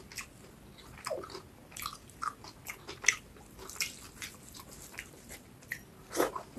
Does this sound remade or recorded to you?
recorded